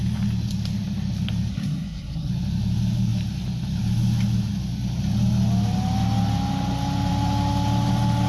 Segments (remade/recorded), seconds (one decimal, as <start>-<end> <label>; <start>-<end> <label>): 0.0-1.5 recorded; 1.5-2.3 remade; 2.3-8.3 recorded